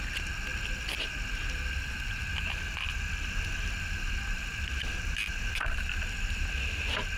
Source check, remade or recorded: recorded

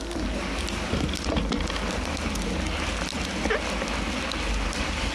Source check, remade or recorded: recorded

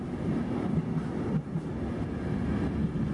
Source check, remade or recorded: recorded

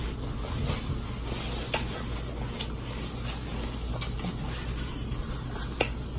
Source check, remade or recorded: recorded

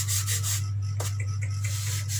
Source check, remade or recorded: recorded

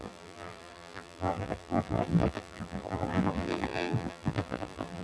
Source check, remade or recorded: remade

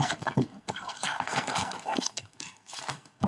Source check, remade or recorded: remade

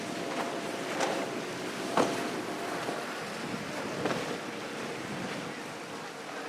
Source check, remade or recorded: remade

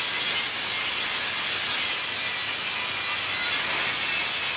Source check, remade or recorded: recorded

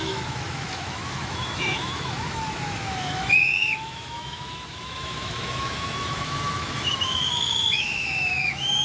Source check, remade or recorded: remade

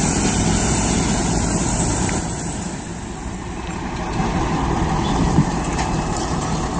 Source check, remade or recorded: remade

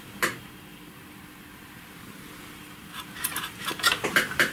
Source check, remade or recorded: recorded